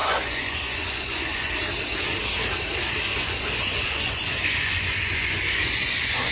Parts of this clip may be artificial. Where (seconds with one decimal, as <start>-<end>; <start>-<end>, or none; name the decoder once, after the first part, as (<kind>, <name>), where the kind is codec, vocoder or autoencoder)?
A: 0.0-1.5 (vocoder, Vocos); 3.1-6.3